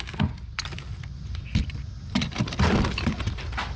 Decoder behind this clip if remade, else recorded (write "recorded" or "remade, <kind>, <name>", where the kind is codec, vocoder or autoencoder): remade, vocoder, BigVGAN v2